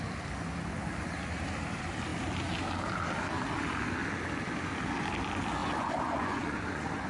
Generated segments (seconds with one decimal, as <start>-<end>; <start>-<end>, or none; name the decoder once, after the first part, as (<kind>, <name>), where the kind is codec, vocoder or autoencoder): 5.6-7.1 (vocoder, Vocos)